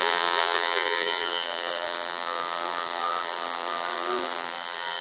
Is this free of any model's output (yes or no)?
no